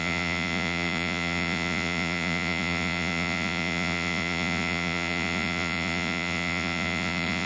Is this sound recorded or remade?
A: remade